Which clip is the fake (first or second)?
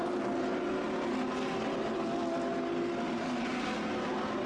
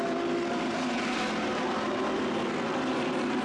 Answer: second